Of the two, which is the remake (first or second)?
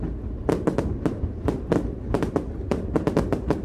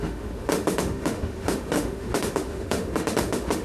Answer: second